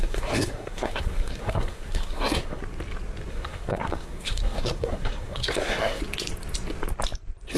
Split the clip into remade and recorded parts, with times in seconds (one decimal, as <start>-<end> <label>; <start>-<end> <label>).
0.0-2.6 remade; 2.6-3.3 recorded; 3.3-6.0 remade; 6.0-7.6 recorded